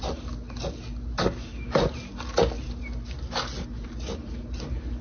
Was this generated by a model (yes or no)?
no